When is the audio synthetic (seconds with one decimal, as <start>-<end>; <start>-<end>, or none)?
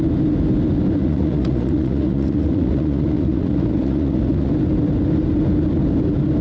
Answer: 1.0-4.5